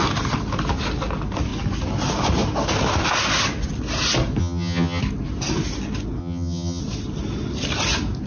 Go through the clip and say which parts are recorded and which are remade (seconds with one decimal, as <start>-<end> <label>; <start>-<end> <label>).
0.0-4.4 recorded; 4.4-5.0 remade; 5.0-6.2 recorded; 6.2-6.8 remade; 6.8-8.3 recorded